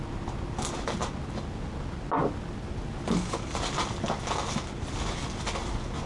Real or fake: real